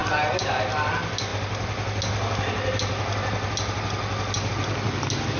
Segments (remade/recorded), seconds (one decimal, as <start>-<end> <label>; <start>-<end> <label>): 0.0-5.4 recorded